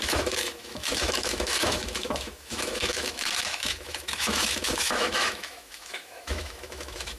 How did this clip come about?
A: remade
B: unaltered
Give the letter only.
A